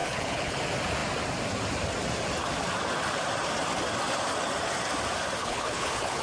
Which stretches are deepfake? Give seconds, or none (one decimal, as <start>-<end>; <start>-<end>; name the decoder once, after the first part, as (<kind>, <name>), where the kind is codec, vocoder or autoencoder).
0.0-0.6 (codec, HILCodec); 5.4-6.2

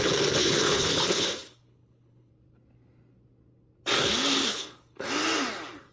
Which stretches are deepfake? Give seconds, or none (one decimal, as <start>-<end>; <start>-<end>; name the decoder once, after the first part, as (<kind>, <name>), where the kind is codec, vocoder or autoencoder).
0.4-2.3 (codec, HILCodec); 4.5-5.1

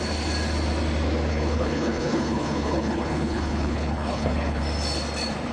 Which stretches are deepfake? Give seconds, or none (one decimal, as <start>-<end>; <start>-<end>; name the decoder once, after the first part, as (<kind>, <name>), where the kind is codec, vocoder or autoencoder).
1.3-4.6 (codec, HILCodec)

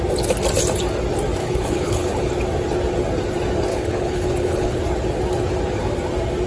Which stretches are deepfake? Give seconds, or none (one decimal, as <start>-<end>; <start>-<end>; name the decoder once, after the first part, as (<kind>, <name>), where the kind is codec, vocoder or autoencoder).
1.4-2.3 (codec, HILCodec); 3.7-4.8

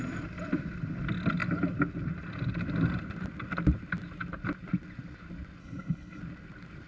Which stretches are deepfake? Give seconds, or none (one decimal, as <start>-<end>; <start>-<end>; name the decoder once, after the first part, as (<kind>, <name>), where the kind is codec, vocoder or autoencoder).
5.6-6.2 (codec, HILCodec)

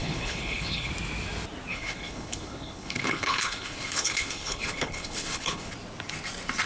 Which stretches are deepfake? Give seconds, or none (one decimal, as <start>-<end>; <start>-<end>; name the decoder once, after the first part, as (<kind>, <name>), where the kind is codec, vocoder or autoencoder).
0.0-0.9 (codec, HILCodec); 1.7-5.7

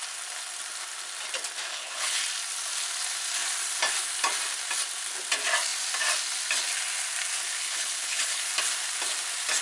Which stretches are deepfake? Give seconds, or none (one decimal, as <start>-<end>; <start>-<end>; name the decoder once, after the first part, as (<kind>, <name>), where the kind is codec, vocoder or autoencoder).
1.7-2.2 (codec, HILCodec); 7.6-8.5